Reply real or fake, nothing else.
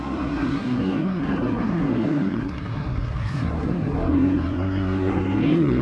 fake